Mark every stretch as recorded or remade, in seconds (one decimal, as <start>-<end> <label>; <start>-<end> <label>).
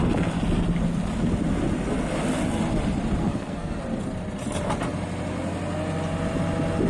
0.0-3.2 recorded; 3.2-3.8 remade; 3.8-6.9 recorded